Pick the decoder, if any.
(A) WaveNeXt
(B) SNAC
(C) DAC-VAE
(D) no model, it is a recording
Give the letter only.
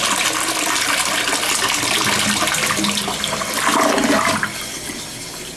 D